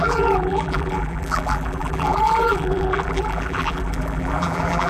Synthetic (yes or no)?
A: yes